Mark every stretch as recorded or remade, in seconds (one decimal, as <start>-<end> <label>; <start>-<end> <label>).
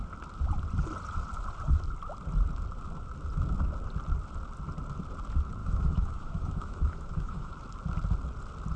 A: 0.0-5.6 recorded; 5.6-7.5 remade; 7.5-8.8 recorded